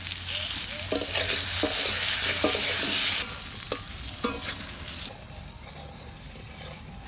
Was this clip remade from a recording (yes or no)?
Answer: no